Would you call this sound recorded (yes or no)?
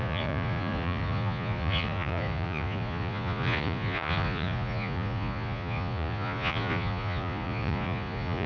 no